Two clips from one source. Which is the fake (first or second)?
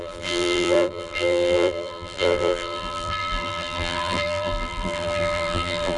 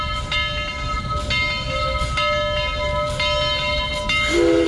first